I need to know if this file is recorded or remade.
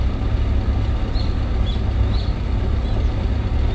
recorded